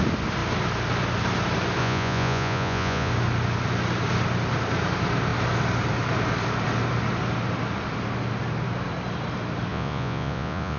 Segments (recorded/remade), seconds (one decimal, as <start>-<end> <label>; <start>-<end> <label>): 0.0-1.8 recorded; 1.8-3.1 remade; 3.1-9.7 recorded; 9.7-10.8 remade